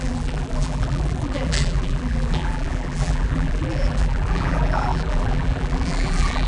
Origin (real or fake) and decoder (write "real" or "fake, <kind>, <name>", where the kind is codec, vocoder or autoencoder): fake, vocoder, BigVGAN v2